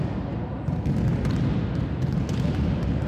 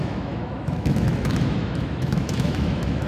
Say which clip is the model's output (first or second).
second